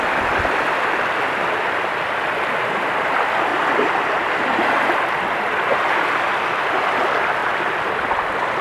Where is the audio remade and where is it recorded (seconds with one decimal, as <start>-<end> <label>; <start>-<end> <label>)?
0.0-3.5 recorded; 3.5-4.3 remade; 4.3-7.4 recorded; 7.4-8.0 remade; 8.0-8.6 recorded